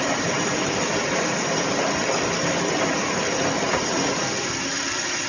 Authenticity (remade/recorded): remade